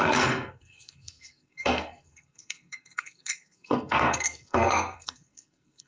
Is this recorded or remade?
remade